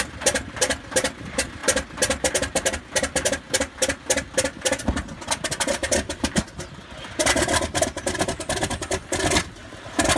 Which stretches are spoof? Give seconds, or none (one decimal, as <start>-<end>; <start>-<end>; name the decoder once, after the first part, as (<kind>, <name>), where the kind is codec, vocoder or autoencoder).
none